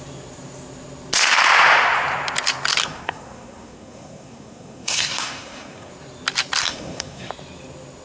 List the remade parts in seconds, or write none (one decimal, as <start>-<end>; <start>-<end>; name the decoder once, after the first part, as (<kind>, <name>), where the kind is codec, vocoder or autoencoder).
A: 2.8-5.9 (codec, SNAC); 6.6-7.3